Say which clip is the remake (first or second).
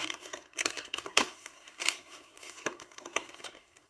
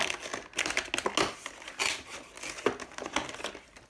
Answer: first